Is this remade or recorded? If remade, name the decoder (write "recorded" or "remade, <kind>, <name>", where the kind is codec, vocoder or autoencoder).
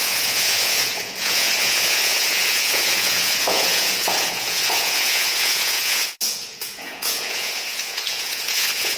remade, vocoder, Vocos